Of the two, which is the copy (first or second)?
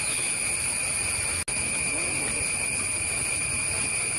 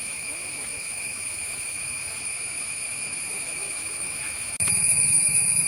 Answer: second